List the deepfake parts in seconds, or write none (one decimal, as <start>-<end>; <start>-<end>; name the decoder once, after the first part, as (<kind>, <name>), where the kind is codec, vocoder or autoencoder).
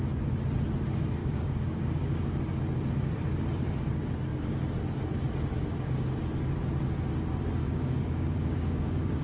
1.2-2.3 (codec, DAC); 7.6-9.2